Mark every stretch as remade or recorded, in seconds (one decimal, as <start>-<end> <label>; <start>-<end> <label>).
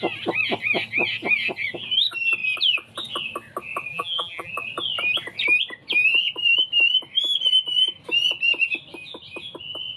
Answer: 0.0-3.9 recorded; 3.9-4.5 remade; 4.5-10.0 recorded